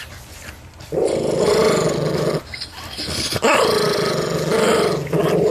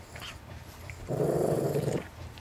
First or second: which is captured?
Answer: first